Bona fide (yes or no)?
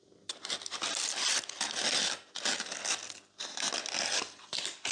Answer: yes